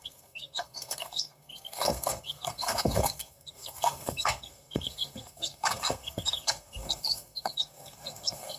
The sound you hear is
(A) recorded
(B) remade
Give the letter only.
B